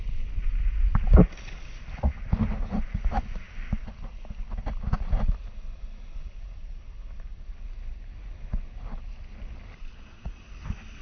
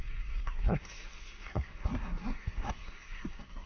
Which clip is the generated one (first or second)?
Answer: second